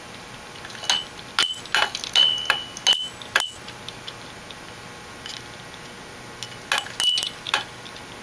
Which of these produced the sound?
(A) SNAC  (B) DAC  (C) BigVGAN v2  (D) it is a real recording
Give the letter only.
D